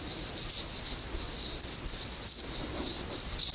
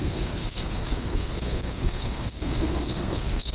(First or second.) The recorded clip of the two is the first